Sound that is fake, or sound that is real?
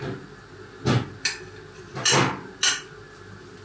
real